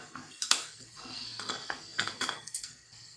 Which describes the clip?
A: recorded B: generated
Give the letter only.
B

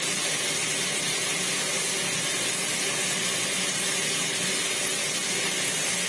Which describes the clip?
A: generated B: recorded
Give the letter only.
B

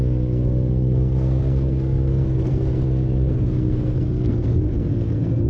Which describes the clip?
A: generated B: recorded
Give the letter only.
A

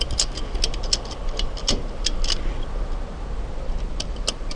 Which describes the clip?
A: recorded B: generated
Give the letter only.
A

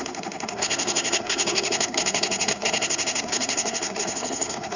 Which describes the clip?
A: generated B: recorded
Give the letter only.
A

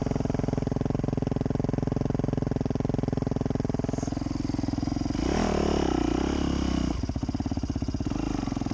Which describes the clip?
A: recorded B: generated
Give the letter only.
A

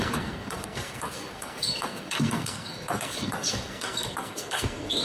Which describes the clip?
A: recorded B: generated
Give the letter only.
B